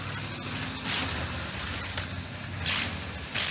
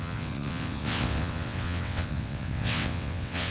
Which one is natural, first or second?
first